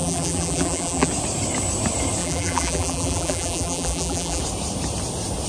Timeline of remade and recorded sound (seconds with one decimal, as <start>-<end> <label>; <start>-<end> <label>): 0.0-1.1 remade; 1.1-2.2 recorded; 2.2-4.4 remade; 4.4-5.5 recorded